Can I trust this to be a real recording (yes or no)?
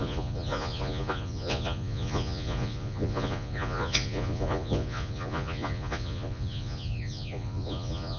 no